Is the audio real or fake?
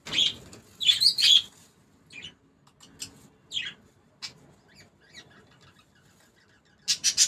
real